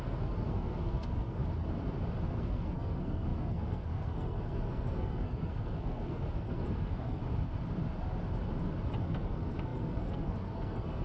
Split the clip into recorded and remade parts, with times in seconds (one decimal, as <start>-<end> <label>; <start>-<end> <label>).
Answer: 0.0-1.4 remade; 1.4-2.2 recorded; 2.2-7.2 remade; 7.2-9.0 recorded; 9.0-11.0 remade